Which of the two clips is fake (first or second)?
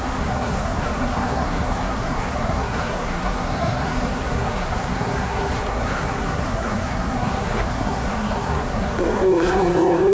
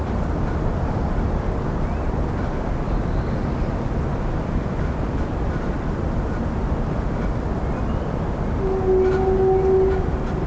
first